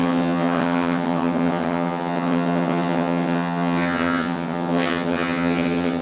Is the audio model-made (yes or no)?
yes